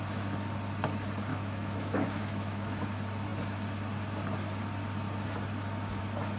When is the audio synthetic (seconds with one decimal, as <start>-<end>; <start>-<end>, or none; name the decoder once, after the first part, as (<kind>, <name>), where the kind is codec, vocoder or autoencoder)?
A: 1.3-2.8 (autoencoder, DAC-VAE)